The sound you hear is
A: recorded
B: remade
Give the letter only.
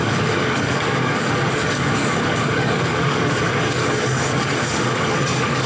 B